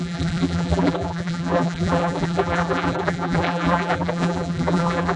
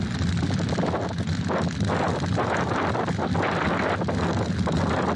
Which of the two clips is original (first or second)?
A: second